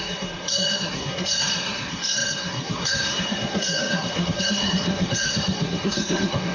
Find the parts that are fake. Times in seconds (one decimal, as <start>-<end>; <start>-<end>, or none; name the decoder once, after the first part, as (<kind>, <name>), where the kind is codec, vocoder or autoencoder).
0.0-6.5 (codec, SNAC)